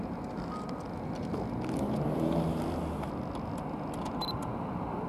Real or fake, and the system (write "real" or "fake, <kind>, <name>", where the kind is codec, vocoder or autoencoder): real